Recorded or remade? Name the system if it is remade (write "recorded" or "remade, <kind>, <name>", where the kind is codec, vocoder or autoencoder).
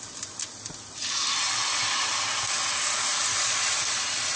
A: recorded